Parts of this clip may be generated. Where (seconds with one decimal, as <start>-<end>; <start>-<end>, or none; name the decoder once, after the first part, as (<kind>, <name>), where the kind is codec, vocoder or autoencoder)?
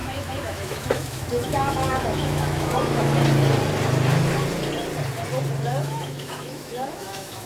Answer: 0.0-3.1 (autoencoder, DAC-VAE); 5.8-7.5